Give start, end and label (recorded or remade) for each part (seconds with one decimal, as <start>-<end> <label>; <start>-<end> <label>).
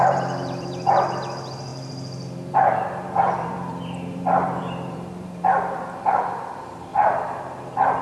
0.0-8.0 remade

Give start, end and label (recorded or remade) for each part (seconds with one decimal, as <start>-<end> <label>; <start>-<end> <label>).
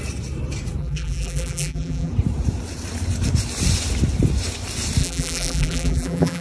0.0-0.8 recorded; 0.8-2.1 remade; 2.1-5.0 recorded; 5.0-6.4 remade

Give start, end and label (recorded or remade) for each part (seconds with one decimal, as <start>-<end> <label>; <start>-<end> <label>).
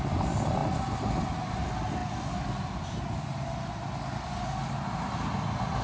0.0-5.8 recorded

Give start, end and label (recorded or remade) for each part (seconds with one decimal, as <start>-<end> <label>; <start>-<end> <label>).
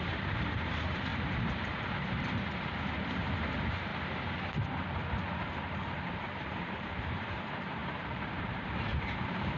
0.0-1.1 remade; 1.1-2.8 recorded; 2.8-3.9 remade; 3.9-5.3 recorded; 5.3-9.6 remade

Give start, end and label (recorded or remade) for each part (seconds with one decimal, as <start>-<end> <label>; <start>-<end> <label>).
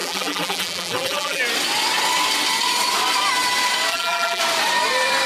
0.0-1.4 remade; 1.4-3.9 recorded; 3.9-4.4 remade; 4.4-5.3 recorded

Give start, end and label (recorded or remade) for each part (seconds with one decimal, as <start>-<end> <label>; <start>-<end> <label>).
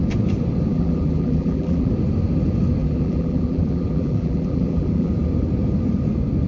0.0-0.7 recorded; 0.7-1.9 remade; 1.9-2.8 recorded; 2.8-5.1 remade; 5.1-6.5 recorded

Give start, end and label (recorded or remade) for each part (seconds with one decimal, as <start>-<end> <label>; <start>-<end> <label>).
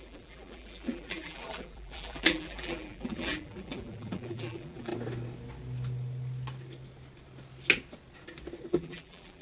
0.0-4.9 remade; 4.9-8.7 recorded; 8.7-9.4 remade